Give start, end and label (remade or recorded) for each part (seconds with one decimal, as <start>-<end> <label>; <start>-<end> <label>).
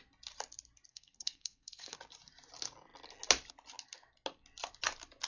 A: 0.0-0.9 recorded; 0.9-2.0 remade; 2.0-5.3 recorded